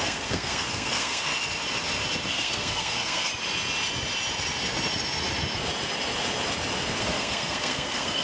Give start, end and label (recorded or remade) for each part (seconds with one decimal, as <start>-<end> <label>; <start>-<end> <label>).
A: 0.0-1.3 remade; 1.3-2.3 recorded; 2.3-3.3 remade; 3.3-7.0 recorded; 7.0-8.2 remade